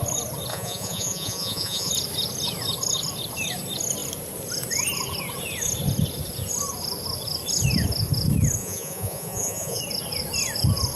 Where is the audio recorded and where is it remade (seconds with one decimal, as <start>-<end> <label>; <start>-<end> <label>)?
0.0-0.5 recorded; 0.5-1.9 remade; 1.9-8.6 recorded; 8.6-9.8 remade; 9.8-11.0 recorded